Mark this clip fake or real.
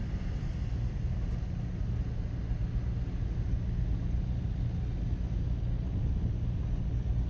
real